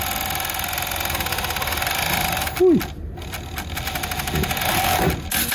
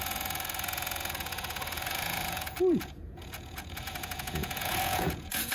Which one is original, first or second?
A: first